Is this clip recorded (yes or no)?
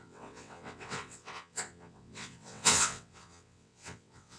no